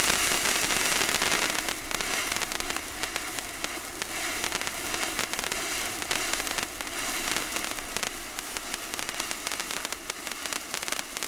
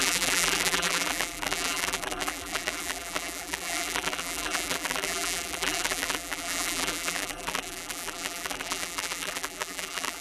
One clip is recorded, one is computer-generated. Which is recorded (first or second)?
first